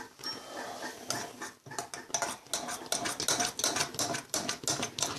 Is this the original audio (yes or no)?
yes